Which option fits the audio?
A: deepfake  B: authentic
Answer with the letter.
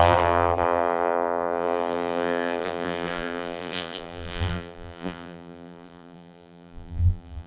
A